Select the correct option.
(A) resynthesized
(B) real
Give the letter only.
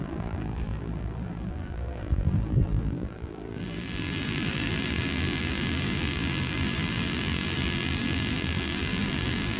A